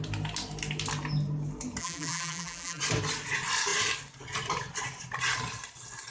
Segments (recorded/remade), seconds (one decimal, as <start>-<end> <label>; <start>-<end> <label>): 0.0-1.8 recorded; 1.8-2.8 remade; 2.8-6.1 recorded